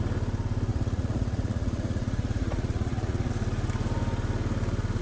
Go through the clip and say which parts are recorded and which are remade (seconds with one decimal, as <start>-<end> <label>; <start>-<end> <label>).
0.0-0.7 recorded; 0.7-3.3 remade; 3.3-5.0 recorded